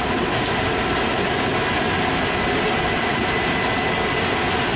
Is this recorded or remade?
recorded